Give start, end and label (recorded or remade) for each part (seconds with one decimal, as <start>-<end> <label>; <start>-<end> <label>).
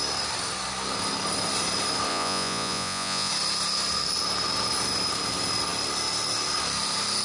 0.0-2.1 recorded; 2.1-3.3 remade; 3.3-7.2 recorded